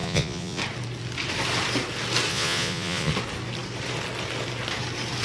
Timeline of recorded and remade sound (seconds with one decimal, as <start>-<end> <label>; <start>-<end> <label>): 0.0-0.6 remade; 0.6-2.3 recorded; 2.3-3.1 remade; 3.1-5.2 recorded